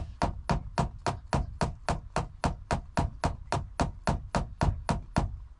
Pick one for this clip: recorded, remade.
recorded